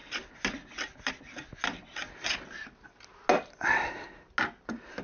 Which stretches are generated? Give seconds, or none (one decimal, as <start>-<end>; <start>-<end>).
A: none